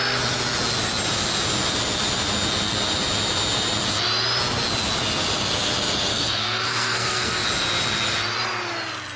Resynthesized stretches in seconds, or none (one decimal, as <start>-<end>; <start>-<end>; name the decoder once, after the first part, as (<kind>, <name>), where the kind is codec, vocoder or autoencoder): 6.1-7.4 (codec, SNAC)